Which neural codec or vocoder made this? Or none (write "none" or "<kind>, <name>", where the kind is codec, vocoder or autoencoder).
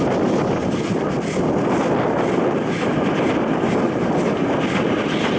none